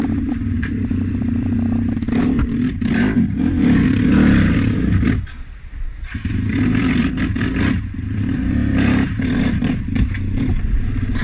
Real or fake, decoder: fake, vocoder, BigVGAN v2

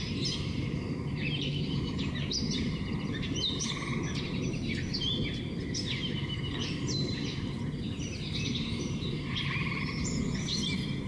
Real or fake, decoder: fake, vocoder, BigVGAN v2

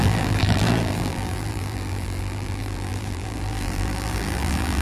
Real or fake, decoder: fake, vocoder, BigVGAN v2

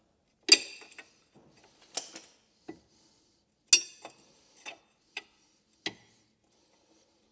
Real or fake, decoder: real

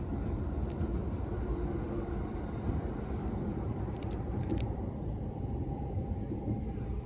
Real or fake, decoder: fake, vocoder, BigVGAN v2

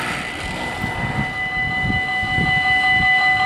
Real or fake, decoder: real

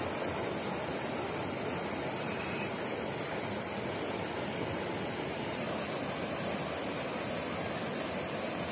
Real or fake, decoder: real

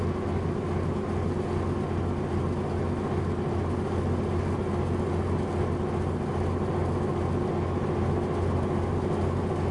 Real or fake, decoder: real